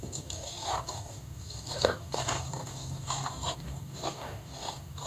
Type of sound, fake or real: fake